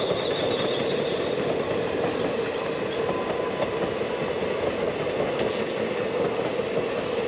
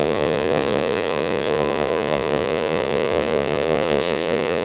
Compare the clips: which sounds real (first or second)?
first